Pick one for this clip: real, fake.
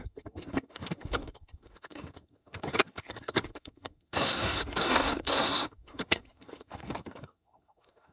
fake